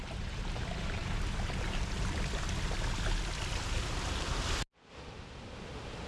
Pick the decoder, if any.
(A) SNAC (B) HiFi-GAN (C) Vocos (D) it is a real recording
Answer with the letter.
D